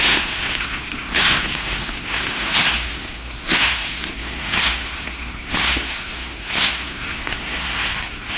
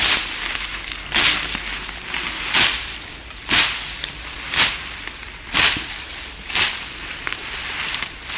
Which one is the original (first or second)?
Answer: second